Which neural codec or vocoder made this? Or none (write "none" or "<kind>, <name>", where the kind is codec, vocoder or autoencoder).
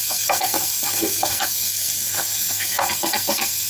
codec, SNAC